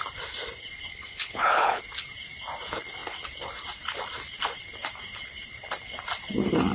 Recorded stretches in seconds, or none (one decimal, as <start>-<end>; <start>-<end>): 0.0-0.9; 1.8-6.7